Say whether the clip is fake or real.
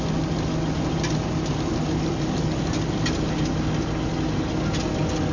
real